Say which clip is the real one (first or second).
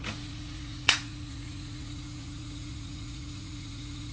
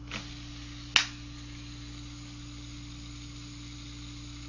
second